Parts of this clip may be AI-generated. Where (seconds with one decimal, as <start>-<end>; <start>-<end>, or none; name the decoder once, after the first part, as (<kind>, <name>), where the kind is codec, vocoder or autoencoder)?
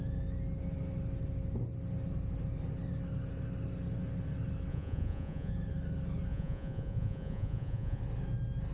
4.7-5.5 (vocoder, Vocos); 6.3-8.0